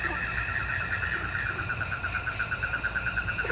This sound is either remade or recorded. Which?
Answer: recorded